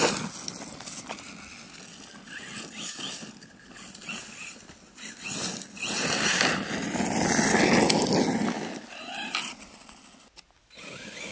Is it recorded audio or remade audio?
recorded